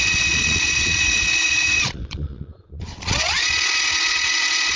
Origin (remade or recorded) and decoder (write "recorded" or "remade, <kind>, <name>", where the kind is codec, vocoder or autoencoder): remade, vocoder, Vocos